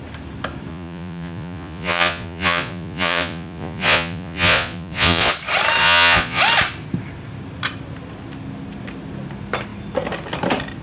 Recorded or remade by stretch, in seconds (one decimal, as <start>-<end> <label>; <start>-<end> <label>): 0.0-0.7 recorded; 0.7-5.3 remade; 5.3-5.8 recorded; 5.8-6.4 remade; 6.4-10.8 recorded